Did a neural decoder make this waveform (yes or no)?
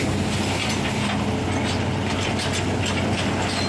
no